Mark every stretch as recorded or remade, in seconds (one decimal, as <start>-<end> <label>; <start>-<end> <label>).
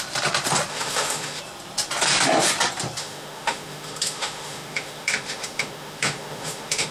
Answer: 0.0-0.7 recorded; 0.7-1.4 remade; 1.4-3.0 recorded; 3.0-6.9 remade